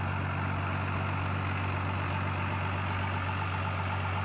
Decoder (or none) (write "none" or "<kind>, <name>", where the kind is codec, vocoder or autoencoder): none